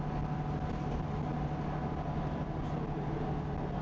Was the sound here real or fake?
real